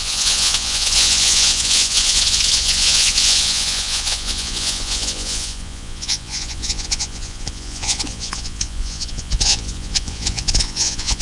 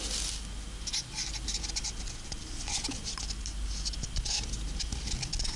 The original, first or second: second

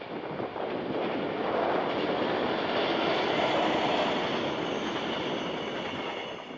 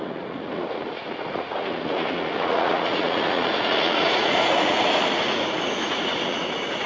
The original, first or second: first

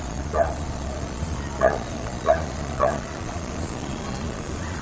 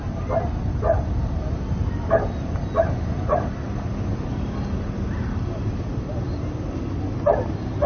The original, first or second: second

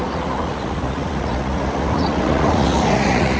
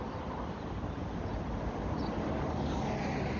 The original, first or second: second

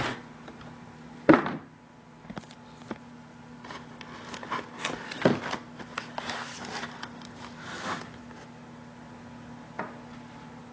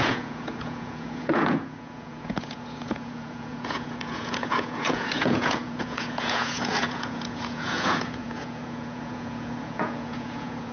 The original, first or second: first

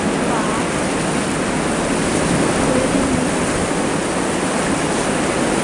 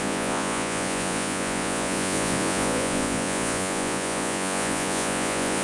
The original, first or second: first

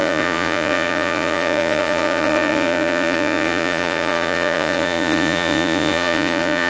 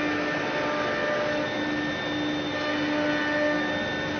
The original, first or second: second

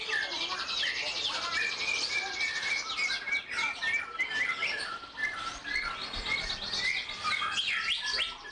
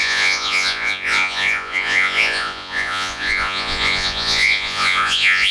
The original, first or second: first